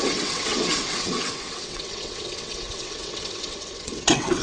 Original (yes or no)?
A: no